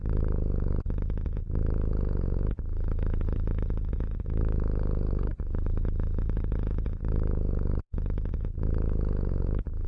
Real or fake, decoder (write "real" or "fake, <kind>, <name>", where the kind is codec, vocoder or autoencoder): real